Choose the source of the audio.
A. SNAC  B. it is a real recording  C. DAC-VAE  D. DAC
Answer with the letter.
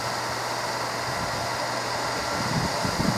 B